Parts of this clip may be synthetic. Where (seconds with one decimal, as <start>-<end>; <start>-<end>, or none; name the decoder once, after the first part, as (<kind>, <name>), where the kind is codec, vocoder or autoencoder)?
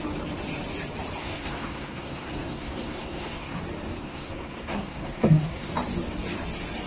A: 1.2-3.6 (codec, SNAC); 4.0-5.7